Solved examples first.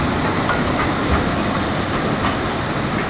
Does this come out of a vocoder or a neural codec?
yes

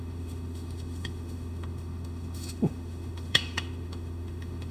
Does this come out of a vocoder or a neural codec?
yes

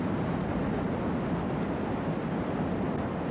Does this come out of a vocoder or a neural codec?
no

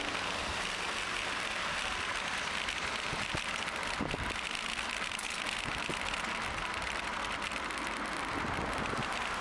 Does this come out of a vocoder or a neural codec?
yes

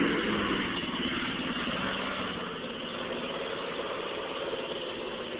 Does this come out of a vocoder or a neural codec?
no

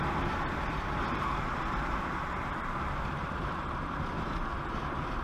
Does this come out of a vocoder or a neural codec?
yes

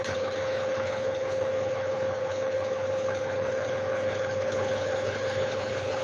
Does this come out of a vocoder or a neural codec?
yes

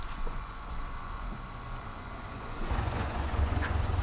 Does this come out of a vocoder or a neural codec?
yes